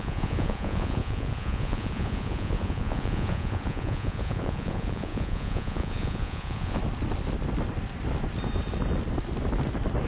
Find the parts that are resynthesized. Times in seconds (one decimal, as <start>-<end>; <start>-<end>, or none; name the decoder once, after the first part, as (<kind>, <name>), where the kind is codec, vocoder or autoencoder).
0.0-6.8 (vocoder, Vocos)